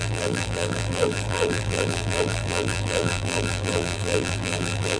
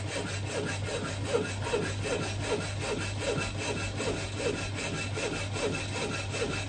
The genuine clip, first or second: second